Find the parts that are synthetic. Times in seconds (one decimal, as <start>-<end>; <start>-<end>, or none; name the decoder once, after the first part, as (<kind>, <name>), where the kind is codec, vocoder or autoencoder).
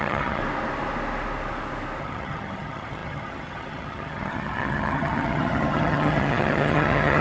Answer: 0.0-0.4 (vocoder, HiFi-GAN); 2.0-7.2